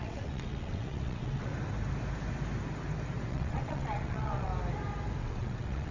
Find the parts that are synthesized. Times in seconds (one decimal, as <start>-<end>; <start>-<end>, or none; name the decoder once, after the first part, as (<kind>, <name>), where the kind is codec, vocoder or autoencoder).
0.0-1.5 (vocoder, WaveNeXt); 3.3-4.5; 5.2-5.9